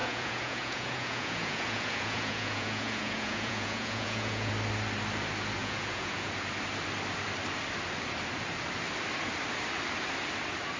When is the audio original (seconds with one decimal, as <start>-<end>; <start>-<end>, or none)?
4.5-5.6; 6.3-10.8